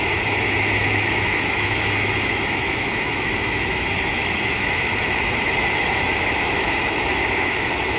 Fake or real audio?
fake